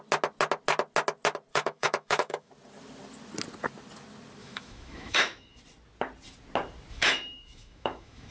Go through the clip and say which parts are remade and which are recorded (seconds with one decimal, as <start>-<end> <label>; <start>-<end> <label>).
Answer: 0.0-1.5 recorded; 1.5-2.5 remade; 2.5-4.4 recorded; 4.4-5.6 remade; 5.6-6.9 recorded; 6.9-8.3 remade